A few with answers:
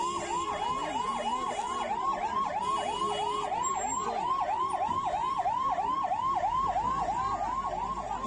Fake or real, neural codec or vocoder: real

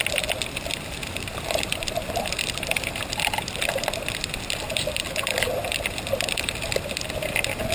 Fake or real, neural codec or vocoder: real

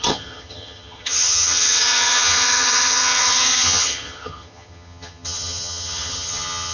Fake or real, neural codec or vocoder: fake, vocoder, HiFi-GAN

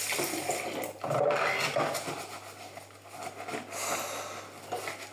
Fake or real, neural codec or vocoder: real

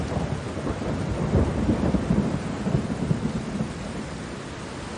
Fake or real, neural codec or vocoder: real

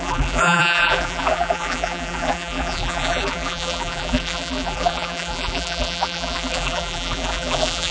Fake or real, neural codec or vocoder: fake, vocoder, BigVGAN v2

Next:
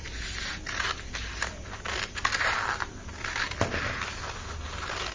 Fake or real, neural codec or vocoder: real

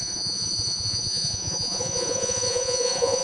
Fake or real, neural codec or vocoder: fake, vocoder, Vocos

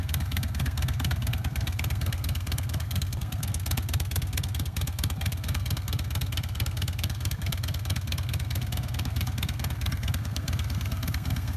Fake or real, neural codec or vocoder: fake, codec, SNAC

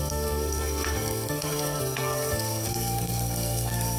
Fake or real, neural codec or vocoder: fake, codec, SNAC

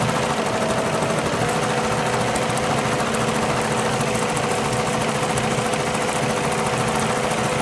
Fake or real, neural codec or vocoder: real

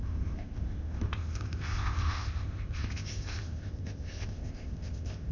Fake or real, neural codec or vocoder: fake, codec, ZipCodec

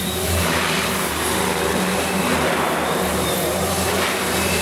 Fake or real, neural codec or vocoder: fake, vocoder, BigVGAN v2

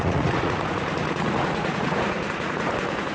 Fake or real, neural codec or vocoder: fake, vocoder, Vocos